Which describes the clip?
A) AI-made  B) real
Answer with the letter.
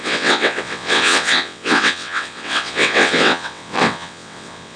A